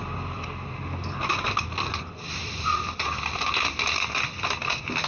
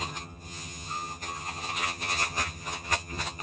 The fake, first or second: second